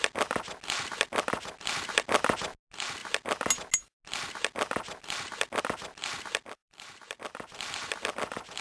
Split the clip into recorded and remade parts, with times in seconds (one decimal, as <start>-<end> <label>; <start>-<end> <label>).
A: 0.0-6.6 recorded; 6.6-7.2 remade; 7.2-8.6 recorded